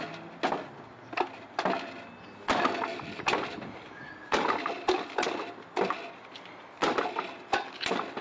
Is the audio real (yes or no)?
yes